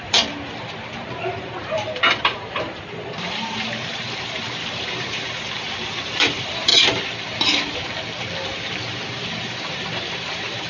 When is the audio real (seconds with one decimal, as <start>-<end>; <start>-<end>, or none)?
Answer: 6.7-8.6